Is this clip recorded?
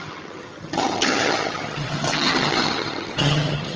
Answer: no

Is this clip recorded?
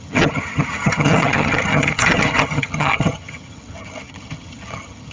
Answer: no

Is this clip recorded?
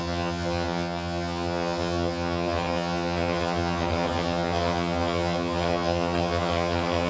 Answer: no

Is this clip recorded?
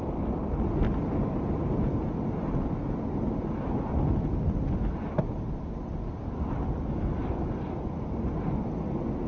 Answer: yes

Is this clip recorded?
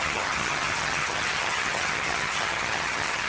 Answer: no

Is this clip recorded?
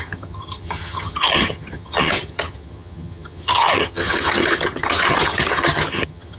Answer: no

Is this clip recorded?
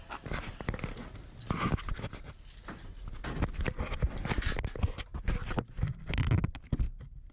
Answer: yes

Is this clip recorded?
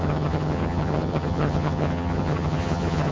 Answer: no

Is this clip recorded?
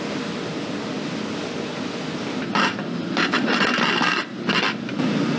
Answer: yes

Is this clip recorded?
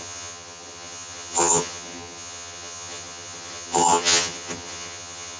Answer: no